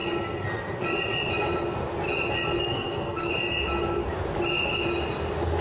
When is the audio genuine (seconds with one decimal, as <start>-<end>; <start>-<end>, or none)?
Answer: 0.0-2.6; 3.3-5.6